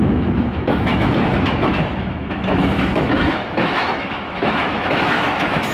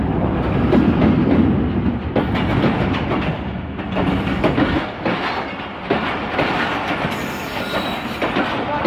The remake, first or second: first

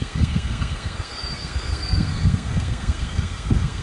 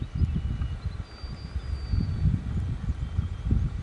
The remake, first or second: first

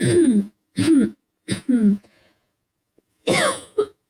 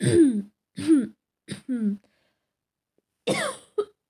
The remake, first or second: first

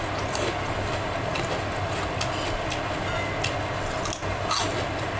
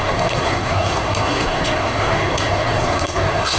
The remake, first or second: second